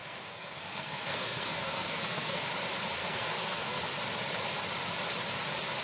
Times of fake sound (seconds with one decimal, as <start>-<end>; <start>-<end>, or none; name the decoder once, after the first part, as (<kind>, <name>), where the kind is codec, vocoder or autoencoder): 0.0-2.4 (codec, SNAC); 3.0-3.8